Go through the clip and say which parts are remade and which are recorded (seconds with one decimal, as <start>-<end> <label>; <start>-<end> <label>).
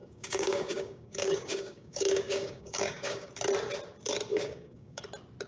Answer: 0.0-3.3 remade; 3.3-4.3 recorded; 4.3-5.0 remade; 5.0-5.5 recorded